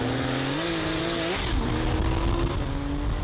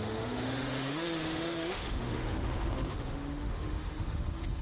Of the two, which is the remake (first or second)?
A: second